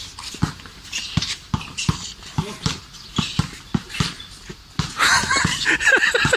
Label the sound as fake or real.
real